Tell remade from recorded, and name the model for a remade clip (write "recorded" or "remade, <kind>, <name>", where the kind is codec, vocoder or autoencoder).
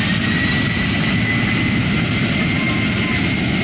recorded